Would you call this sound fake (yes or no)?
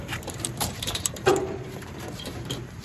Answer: yes